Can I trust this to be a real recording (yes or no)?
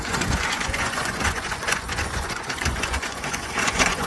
no